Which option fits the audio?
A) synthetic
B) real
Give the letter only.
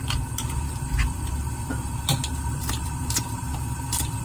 A